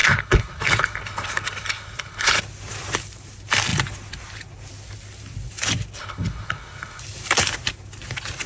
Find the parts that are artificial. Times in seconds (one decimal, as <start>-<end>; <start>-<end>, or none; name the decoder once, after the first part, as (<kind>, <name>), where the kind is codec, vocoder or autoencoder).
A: 0.0-2.4 (codec, HILCodec); 6.0-7.0